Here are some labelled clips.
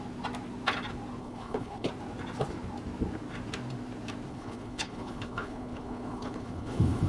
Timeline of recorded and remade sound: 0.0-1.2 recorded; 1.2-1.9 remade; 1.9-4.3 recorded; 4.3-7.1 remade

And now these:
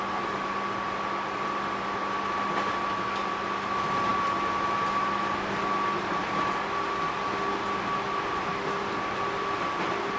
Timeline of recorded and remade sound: 0.0-4.1 recorded; 4.1-5.6 remade; 5.6-10.2 recorded

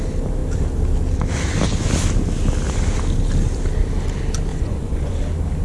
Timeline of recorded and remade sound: 0.0-4.5 recorded; 4.5-5.1 remade; 5.1-5.6 recorded

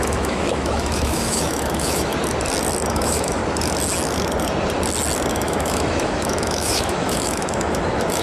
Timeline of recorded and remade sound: 0.0-2.1 remade; 2.1-2.9 recorded; 2.9-3.4 remade; 3.4-5.3 recorded; 5.3-8.2 remade

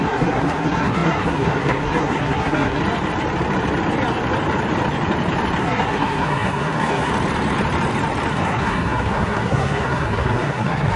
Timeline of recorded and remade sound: 0.0-2.8 remade; 2.8-5.6 recorded; 5.6-7.1 remade; 7.1-8.3 recorded; 8.3-11.0 remade

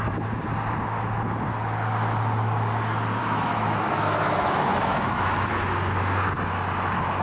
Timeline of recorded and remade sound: 0.0-3.2 recorded; 3.2-5.5 remade; 5.5-7.2 recorded

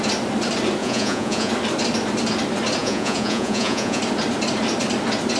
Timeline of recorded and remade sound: 0.0-0.8 recorded; 0.8-1.5 remade; 1.5-2.8 recorded; 2.8-4.0 remade; 4.0-5.4 recorded

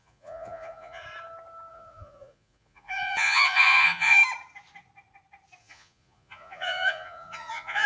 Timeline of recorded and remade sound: 0.0-1.0 remade; 1.0-1.7 recorded; 1.7-4.2 remade; 4.2-5.6 recorded; 5.6-7.9 remade